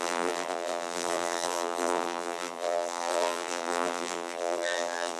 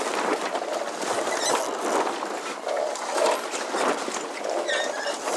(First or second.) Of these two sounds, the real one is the second